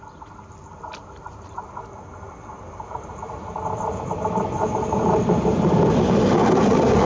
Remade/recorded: recorded